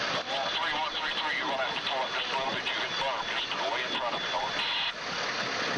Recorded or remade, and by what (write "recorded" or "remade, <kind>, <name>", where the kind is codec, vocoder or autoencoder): recorded